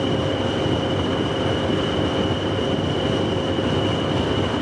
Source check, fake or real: real